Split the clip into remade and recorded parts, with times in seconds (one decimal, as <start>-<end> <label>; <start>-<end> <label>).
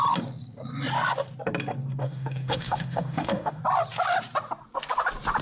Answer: 0.0-2.0 recorded; 2.0-3.6 remade; 3.6-5.4 recorded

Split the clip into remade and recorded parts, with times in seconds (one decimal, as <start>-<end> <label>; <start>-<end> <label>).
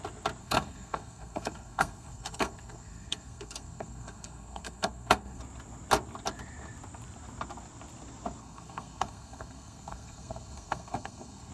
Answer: 0.0-0.4 recorded; 0.4-5.4 remade; 5.4-8.4 recorded; 8.4-11.5 remade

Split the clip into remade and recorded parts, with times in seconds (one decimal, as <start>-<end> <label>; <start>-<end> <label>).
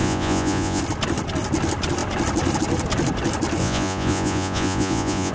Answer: 0.0-0.8 remade; 0.8-3.6 recorded; 3.6-5.3 remade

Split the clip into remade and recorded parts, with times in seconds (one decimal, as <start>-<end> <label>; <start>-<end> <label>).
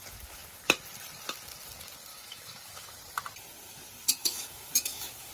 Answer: 0.0-2.1 recorded; 2.1-3.0 remade; 3.0-4.2 recorded; 4.2-5.3 remade